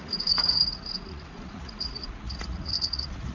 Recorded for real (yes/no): no